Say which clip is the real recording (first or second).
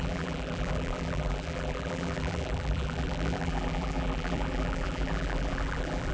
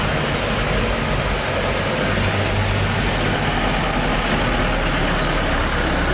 second